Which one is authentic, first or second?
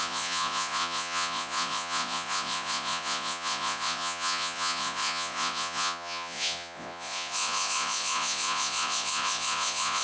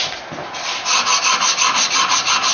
second